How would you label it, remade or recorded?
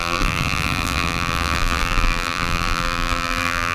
remade